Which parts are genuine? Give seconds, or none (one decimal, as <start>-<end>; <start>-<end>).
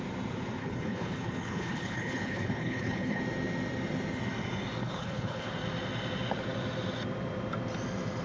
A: 0.0-0.6; 3.2-4.8; 5.5-8.2